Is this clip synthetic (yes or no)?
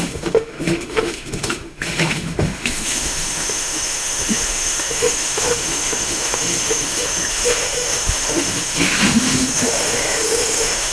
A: yes